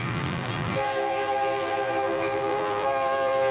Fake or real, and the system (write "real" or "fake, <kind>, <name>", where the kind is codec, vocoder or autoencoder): fake, vocoder, BigVGAN v2